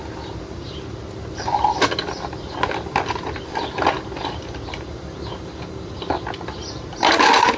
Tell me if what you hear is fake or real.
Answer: real